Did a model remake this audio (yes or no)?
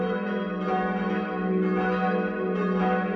no